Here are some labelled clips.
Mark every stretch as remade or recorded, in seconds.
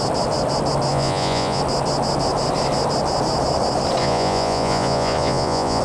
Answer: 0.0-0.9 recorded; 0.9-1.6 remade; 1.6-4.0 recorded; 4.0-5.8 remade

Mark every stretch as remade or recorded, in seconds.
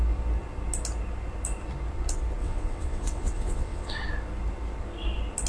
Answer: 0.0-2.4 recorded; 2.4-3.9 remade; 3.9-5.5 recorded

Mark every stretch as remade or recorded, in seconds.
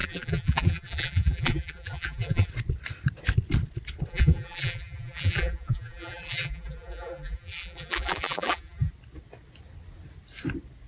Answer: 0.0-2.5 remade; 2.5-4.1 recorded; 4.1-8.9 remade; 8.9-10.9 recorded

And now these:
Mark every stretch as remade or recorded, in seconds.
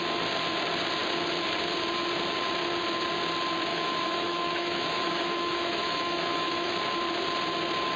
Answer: 0.0-3.7 recorded; 3.7-6.7 remade; 6.7-8.0 recorded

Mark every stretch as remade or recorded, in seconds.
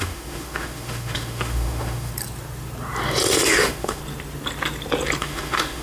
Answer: 0.0-2.1 remade; 2.1-3.5 recorded; 3.5-4.0 remade; 4.0-5.2 recorded; 5.2-5.8 remade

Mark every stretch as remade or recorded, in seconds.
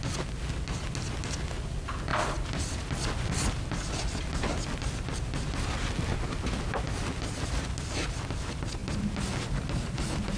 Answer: 0.0-2.1 recorded; 2.1-4.1 remade; 4.1-10.4 recorded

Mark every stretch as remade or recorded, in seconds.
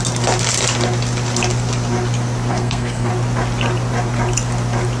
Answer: 0.0-2.5 recorded; 2.5-3.1 remade; 3.1-5.0 recorded